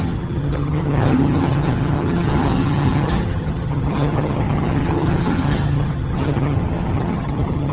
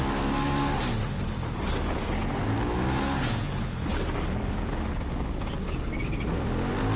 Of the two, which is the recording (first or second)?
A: second